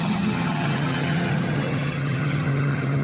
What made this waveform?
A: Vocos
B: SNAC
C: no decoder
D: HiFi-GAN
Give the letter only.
D